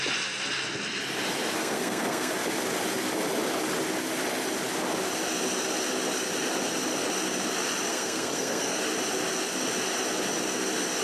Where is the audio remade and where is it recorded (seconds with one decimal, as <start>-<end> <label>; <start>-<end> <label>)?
0.0-1.6 recorded; 1.6-2.3 remade; 2.3-7.9 recorded; 7.9-8.8 remade; 8.8-11.0 recorded